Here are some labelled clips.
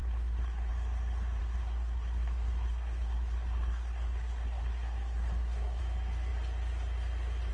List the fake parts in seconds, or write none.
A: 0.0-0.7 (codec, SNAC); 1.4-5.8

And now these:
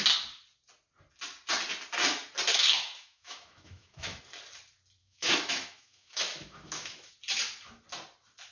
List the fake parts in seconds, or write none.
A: 2.5-4.2 (autoencoder, DAC-VAE); 5.0-7.1

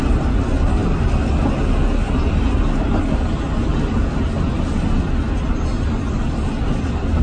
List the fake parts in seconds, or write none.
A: none

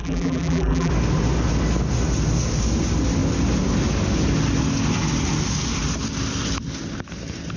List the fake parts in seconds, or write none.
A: 0.0-0.9 (vocoder, BigVGAN v2)

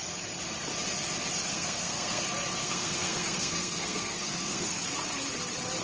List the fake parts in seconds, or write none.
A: 1.5-2.2 (codec, SNAC); 2.6-4.8

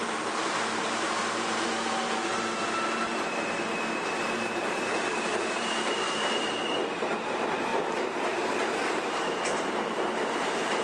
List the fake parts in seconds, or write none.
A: 0.0-2.3 (vocoder, BigVGAN v2); 3.7-10.8